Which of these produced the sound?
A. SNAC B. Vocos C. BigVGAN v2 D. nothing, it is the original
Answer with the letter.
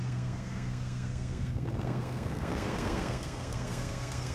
A